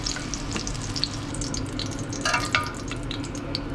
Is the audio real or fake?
real